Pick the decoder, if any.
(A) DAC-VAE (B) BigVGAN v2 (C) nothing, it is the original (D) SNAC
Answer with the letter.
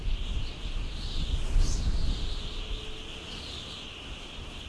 C